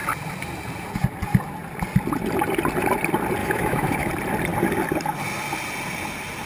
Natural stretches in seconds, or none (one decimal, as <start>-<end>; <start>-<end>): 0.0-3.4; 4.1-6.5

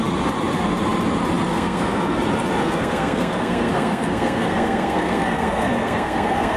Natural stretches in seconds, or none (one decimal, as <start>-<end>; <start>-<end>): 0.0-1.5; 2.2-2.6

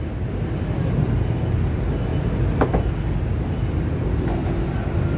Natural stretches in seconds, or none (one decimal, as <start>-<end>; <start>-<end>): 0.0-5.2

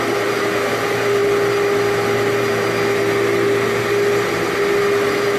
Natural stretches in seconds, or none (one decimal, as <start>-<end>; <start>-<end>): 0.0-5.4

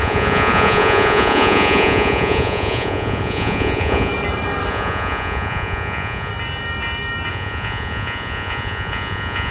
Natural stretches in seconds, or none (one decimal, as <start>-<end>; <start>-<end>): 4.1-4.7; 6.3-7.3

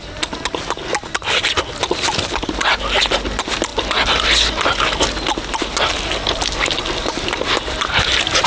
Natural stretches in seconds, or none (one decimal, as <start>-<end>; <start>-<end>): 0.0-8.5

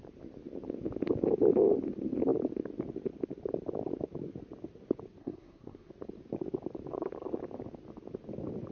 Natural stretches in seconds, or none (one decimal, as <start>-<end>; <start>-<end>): 0.0-5.2; 5.9-8.7